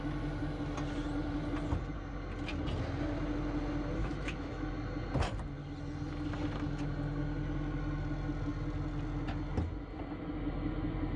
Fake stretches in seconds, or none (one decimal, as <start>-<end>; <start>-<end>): 4.0-4.7